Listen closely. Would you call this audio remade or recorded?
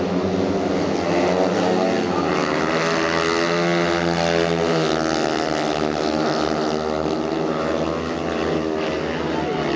recorded